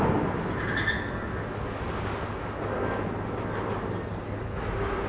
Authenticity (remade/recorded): recorded